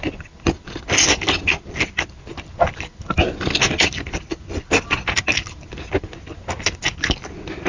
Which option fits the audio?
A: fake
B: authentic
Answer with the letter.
B